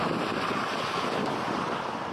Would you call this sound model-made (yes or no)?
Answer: no